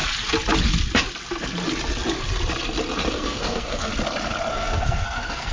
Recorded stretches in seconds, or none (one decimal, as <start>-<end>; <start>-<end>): 0.0-3.1; 3.9-4.5